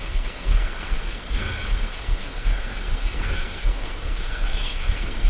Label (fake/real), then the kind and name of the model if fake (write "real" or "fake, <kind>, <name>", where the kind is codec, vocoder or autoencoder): fake, codec, SNAC